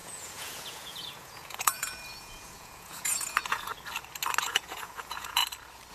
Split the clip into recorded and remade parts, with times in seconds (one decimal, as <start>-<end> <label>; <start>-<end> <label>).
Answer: 0.0-3.7 remade; 3.7-4.4 recorded; 4.4-5.4 remade; 5.4-5.9 recorded